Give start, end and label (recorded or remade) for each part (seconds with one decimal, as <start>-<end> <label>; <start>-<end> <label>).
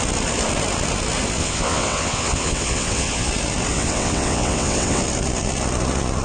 0.0-1.4 recorded; 1.4-3.3 remade; 3.3-3.7 recorded; 3.7-5.0 remade; 5.0-6.2 recorded